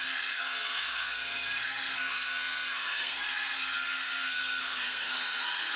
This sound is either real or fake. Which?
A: fake